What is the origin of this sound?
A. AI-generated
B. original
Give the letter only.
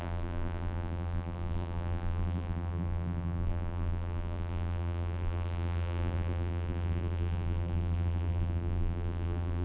A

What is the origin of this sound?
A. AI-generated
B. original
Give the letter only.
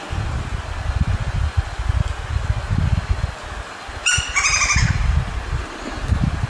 B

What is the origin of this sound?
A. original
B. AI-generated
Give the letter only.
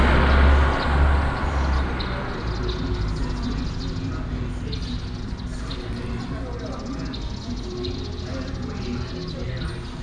A